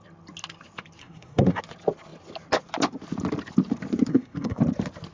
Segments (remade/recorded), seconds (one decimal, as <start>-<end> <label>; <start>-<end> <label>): 0.0-1.0 recorded; 1.0-1.6 remade; 1.6-4.1 recorded; 4.1-4.6 remade; 4.6-5.1 recorded